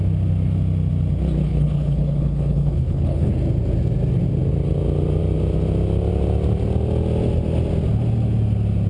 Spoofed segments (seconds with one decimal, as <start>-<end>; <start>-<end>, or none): 1.4-3.3